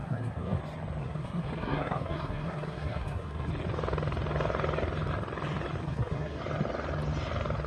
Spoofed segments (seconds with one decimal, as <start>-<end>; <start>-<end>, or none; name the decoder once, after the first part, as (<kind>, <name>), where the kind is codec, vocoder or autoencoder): 0.0-0.6 (codec, SNAC); 1.0-3.5; 5.8-6.4